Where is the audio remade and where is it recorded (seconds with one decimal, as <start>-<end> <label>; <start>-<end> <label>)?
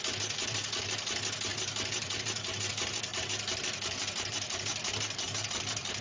0.0-6.0 remade